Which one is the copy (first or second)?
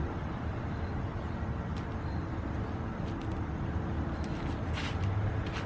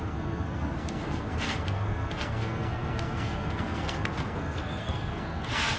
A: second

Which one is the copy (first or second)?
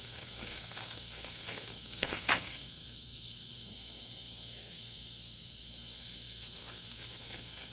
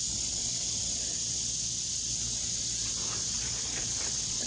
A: first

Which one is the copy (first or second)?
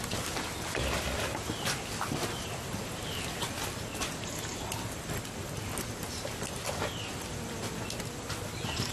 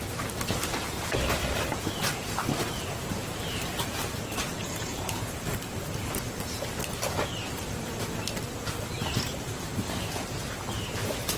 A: second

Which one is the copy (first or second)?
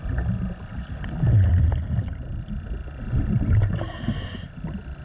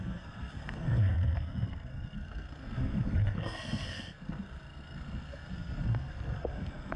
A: second